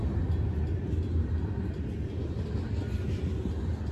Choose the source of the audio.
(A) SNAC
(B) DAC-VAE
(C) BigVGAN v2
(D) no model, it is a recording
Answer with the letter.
D